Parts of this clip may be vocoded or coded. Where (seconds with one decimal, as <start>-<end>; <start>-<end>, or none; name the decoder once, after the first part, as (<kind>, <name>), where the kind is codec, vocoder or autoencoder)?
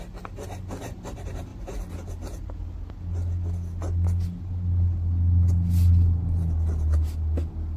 none